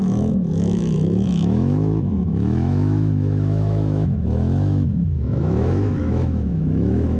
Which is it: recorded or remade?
remade